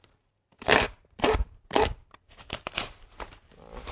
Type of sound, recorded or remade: remade